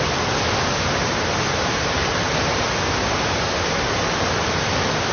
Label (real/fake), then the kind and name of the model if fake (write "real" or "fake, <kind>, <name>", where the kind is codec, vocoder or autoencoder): real